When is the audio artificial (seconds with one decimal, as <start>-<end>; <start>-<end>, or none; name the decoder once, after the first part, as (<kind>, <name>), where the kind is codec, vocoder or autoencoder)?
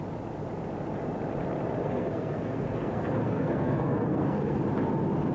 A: 1.8-4.6 (codec, SNAC)